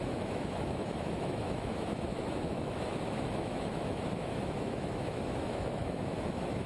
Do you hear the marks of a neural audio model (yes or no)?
yes